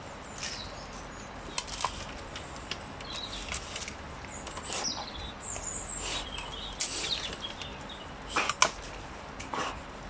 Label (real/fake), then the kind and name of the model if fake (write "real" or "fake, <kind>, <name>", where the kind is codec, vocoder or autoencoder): real